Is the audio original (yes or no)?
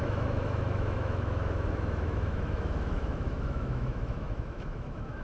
no